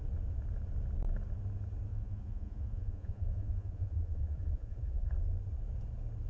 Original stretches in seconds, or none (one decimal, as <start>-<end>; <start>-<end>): 0.0-1.9; 5.1-6.3